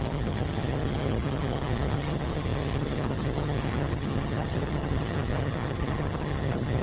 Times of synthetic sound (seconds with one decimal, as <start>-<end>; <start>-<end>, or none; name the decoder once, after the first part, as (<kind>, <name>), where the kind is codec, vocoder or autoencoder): 0.0-6.8 (vocoder, HiFi-GAN)